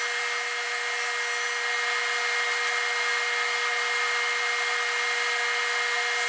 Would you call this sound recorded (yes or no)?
yes